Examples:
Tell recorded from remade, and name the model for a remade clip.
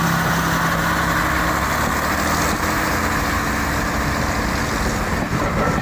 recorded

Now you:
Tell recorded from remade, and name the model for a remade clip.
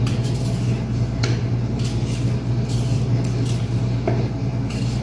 recorded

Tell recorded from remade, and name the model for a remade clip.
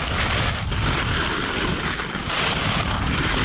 recorded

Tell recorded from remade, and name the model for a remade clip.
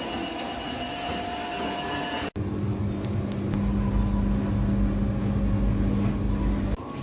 recorded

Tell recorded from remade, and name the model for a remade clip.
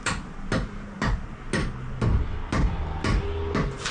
recorded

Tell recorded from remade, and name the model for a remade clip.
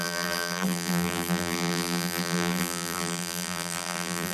remade, vocoder, BigVGAN v2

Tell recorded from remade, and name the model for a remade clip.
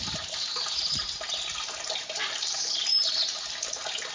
recorded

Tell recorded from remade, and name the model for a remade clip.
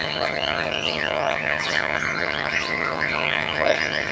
remade, vocoder, HiFi-GAN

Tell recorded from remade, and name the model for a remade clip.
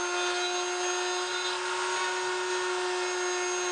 recorded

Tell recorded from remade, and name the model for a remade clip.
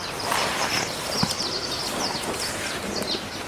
recorded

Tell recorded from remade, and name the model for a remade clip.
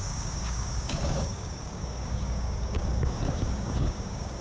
remade, codec, DAC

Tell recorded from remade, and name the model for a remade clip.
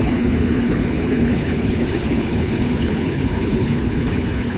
remade, codec, HILCodec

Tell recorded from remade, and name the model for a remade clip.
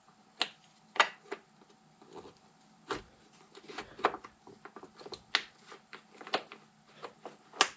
recorded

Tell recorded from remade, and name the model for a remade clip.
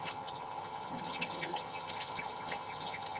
remade, vocoder, HiFi-GAN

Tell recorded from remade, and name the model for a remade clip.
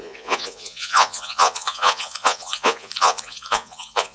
remade, vocoder, Vocos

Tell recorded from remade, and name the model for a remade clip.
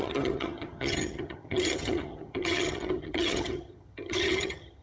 remade, vocoder, HiFi-GAN